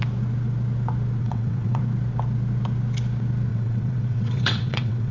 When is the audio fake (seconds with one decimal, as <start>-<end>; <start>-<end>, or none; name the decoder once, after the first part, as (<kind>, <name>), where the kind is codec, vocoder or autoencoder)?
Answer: 1.2-1.8 (vocoder, WaveNeXt); 3.5-5.1